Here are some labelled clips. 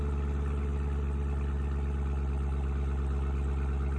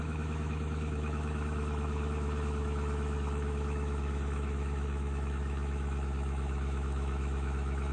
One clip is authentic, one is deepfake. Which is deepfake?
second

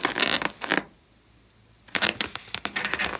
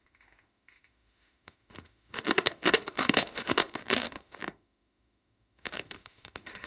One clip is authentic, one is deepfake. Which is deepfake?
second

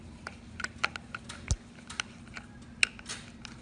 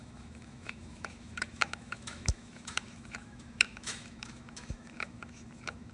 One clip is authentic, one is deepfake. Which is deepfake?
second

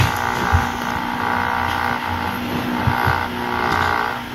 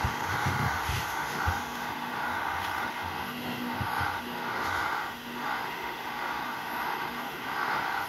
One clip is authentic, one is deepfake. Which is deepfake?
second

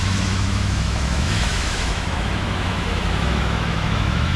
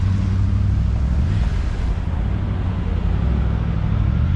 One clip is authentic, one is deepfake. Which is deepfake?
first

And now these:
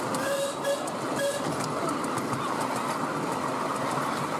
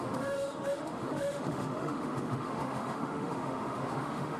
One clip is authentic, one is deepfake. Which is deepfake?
second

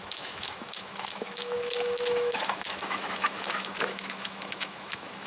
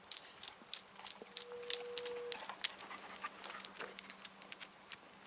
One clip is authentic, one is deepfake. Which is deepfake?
first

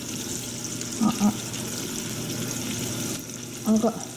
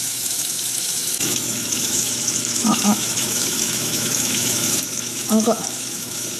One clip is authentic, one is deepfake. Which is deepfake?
second